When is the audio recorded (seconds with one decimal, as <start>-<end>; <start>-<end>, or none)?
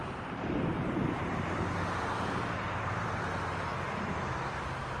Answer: 0.0-5.0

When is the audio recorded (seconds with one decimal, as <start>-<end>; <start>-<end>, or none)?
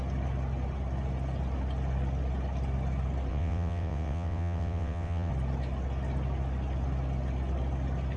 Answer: 0.0-3.3; 5.3-8.2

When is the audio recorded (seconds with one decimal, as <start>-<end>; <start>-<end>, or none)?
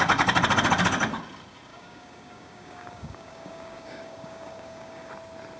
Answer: 0.0-1.7; 5.1-5.6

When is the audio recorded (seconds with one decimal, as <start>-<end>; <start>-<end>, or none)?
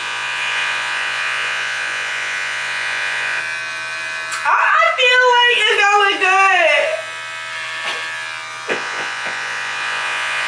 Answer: 3.4-8.7